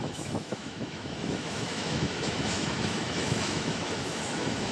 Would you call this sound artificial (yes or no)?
yes